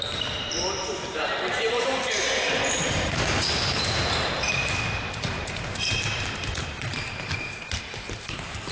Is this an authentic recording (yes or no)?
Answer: no